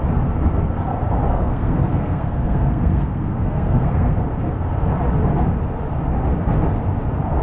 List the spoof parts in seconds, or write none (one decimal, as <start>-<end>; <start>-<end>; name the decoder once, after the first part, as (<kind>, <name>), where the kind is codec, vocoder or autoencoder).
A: 1.3-4.2 (codec, SNAC)